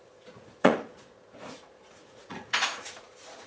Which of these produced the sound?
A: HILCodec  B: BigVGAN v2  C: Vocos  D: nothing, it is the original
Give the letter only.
C